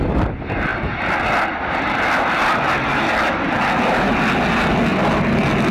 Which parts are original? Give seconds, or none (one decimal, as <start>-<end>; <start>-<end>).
0.0-5.7